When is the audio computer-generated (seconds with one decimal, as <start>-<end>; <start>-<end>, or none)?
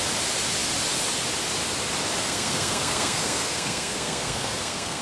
2.2-5.0